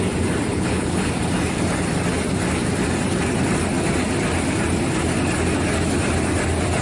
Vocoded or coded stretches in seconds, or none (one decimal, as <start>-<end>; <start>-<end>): 0.5-1.1